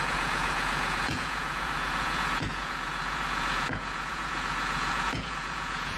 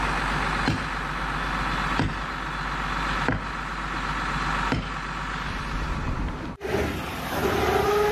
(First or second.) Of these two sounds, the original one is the second